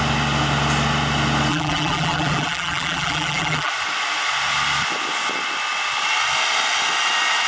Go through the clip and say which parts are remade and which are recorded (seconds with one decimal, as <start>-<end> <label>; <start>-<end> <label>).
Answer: 0.0-1.5 recorded; 1.5-3.7 remade; 3.7-7.5 recorded